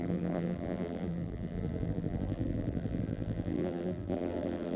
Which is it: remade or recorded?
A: remade